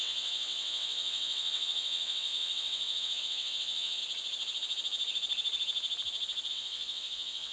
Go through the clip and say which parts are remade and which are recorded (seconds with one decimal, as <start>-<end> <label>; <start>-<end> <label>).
0.0-4.0 remade; 4.0-6.5 recorded; 6.5-7.5 remade